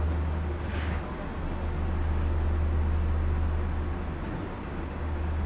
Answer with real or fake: real